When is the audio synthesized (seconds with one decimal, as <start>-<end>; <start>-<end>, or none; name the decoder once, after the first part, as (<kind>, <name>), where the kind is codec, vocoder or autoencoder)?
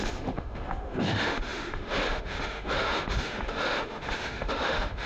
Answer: 0.0-5.1 (autoencoder, DAC-VAE)